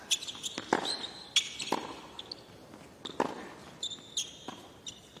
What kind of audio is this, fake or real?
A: real